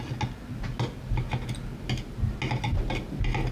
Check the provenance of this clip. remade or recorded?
recorded